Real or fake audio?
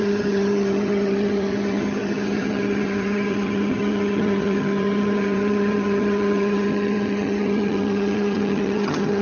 fake